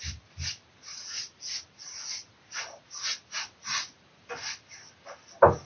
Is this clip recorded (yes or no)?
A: yes